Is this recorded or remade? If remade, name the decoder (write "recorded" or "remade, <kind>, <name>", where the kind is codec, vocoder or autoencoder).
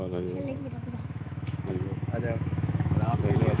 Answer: remade, autoencoder, DAC-VAE